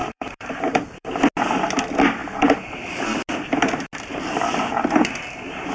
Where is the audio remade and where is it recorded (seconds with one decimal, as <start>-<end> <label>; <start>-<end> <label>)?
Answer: 0.0-1.1 remade; 1.1-5.7 recorded